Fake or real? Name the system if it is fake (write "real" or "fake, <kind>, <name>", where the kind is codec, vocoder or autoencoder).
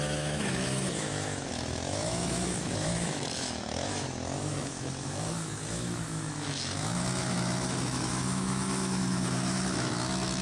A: fake, autoencoder, DAC-VAE